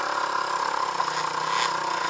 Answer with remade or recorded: recorded